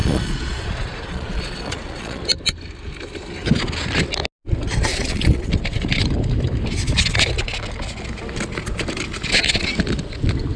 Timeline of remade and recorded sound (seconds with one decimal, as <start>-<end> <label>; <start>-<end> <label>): 0.0-2.2 remade; 2.2-4.9 recorded; 4.9-5.5 remade; 5.5-10.6 recorded